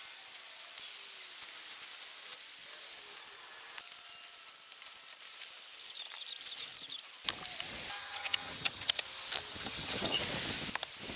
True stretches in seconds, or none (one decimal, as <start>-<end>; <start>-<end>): 0.0-8.0; 9.0-9.5; 10.2-11.2